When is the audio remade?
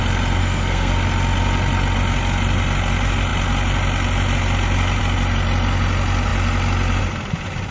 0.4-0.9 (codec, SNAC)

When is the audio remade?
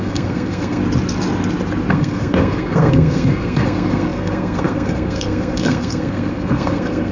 0.0-0.8 (codec, SNAC); 1.9-7.1